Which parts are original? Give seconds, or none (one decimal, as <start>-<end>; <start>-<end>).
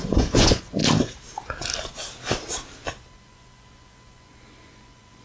0.8-3.1